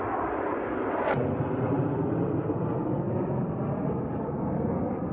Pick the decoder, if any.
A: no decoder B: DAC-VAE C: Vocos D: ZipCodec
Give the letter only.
A